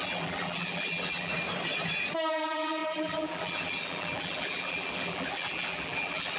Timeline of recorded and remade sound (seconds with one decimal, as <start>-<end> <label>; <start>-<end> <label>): 0.0-1.3 remade; 1.3-2.3 recorded; 2.3-6.4 remade